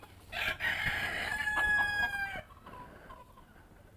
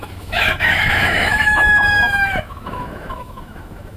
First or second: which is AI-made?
second